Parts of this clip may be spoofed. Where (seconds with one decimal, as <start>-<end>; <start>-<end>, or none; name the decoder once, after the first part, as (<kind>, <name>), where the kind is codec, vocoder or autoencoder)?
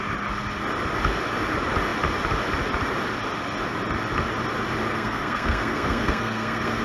4.9-6.8 (codec, SNAC)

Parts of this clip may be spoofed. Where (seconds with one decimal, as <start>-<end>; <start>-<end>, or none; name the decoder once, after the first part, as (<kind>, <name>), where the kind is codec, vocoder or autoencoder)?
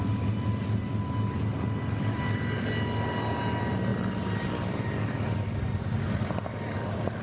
none